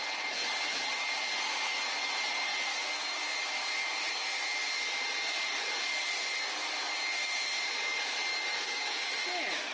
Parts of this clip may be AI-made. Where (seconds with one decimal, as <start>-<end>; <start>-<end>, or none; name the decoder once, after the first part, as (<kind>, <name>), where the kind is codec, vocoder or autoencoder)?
8.3-9.1 (codec, DAC)